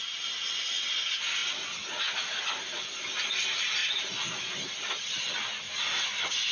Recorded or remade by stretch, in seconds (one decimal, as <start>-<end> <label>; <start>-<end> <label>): 0.0-6.5 recorded